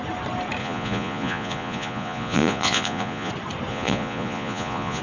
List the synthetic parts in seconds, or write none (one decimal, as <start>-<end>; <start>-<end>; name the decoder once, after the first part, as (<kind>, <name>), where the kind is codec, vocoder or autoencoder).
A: 0.6-3.3 (vocoder, Vocos); 3.7-5.0